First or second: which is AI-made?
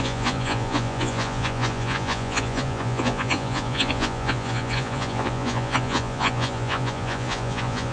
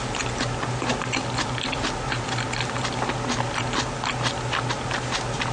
first